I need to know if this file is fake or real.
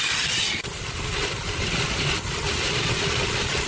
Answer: real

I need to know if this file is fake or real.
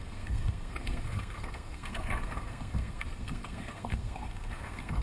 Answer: fake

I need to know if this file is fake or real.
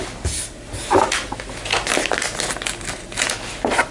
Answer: real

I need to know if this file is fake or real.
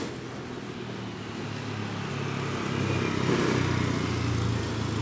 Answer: real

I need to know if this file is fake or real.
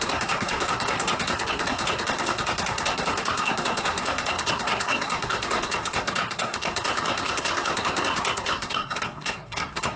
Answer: fake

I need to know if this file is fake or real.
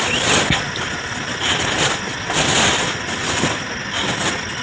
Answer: real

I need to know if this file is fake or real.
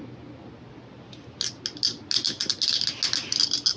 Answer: real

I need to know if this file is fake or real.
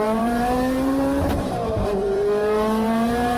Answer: fake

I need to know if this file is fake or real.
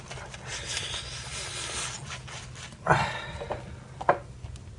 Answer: real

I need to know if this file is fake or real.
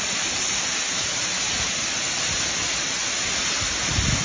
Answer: real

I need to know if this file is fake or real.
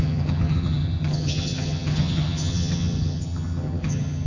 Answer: fake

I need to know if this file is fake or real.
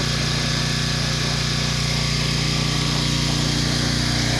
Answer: real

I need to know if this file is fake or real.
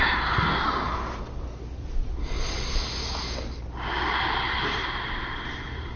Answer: real